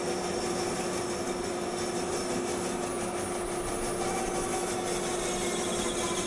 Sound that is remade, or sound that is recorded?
recorded